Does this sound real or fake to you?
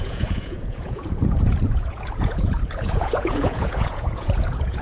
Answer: fake